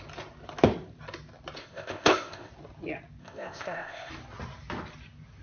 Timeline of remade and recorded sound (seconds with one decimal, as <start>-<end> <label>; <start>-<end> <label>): 0.0-1.6 recorded; 1.6-2.5 remade; 2.5-3.2 recorded; 3.2-4.1 remade; 4.1-5.4 recorded